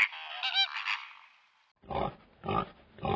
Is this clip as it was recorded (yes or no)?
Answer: yes